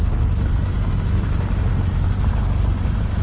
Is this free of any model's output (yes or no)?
yes